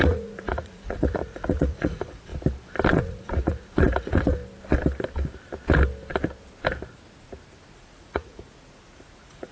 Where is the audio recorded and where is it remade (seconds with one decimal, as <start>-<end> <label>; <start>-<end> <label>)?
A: 0.0-2.3 remade; 2.3-2.9 recorded; 2.9-4.4 remade; 4.4-7.7 recorded; 7.7-9.5 remade